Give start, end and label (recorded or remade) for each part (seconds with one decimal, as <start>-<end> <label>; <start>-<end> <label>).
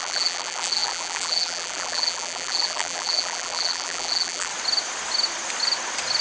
0.0-4.5 remade; 4.5-6.2 recorded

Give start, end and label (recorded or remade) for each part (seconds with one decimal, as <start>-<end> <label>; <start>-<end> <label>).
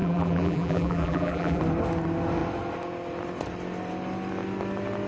0.0-1.6 remade; 1.6-5.1 recorded